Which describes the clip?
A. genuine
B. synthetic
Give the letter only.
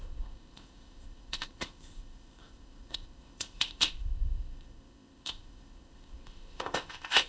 B